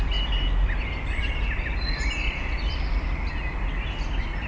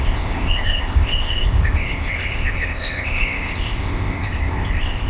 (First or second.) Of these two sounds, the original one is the first